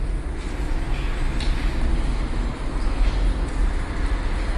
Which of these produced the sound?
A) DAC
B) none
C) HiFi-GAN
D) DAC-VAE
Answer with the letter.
B